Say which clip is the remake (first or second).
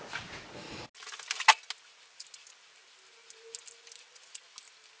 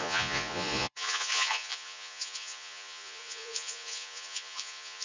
second